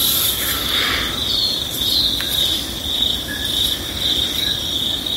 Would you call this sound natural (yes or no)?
no